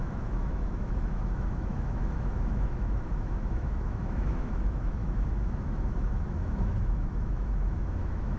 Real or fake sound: fake